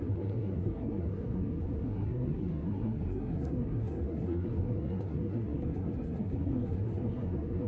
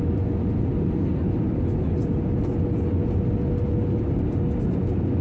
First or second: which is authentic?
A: second